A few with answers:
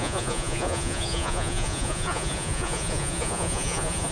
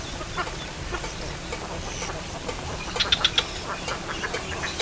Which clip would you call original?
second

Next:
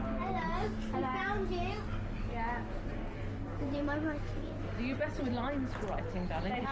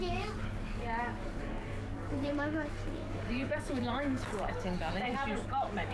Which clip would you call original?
first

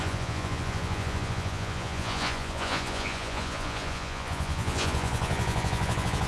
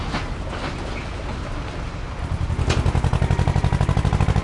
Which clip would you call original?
second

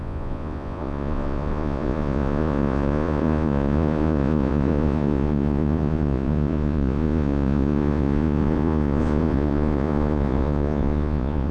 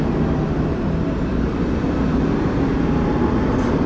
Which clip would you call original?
second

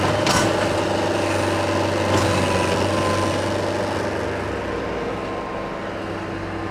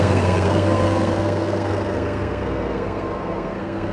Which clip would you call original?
first